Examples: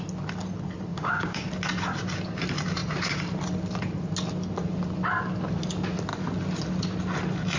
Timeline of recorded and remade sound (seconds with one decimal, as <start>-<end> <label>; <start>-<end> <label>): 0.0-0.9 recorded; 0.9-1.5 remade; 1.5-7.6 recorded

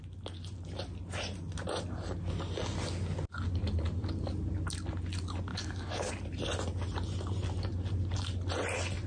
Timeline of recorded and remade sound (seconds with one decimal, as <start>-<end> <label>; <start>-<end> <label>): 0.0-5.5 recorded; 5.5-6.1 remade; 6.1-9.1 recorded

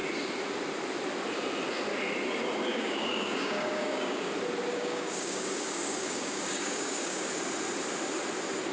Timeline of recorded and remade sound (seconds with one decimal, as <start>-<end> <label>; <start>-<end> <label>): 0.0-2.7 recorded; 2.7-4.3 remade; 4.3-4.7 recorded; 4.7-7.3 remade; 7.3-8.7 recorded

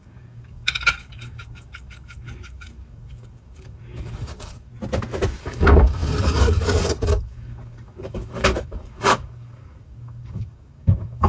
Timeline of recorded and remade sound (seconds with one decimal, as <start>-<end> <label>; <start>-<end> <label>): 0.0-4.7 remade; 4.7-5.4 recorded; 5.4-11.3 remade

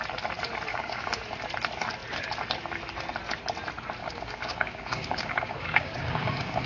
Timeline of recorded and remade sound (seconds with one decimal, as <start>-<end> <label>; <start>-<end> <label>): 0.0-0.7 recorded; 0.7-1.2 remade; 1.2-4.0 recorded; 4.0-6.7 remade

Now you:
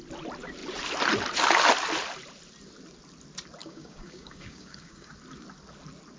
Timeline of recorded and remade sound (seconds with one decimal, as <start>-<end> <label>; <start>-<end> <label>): 0.0-3.6 recorded; 3.6-5.1 remade; 5.1-6.2 recorded